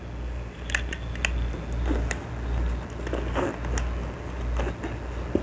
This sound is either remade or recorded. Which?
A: recorded